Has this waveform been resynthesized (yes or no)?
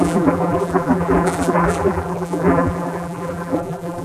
yes